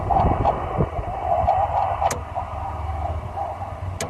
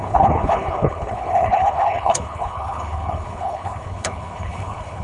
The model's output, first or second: second